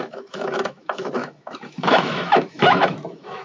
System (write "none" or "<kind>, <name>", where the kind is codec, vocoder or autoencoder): autoencoder, DAC-VAE